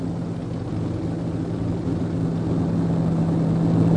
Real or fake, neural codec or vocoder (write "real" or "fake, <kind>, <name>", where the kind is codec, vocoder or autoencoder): real